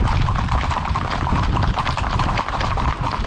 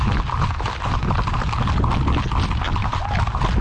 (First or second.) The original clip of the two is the second